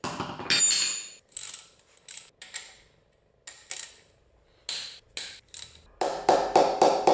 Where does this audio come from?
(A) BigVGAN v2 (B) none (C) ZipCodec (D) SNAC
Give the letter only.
B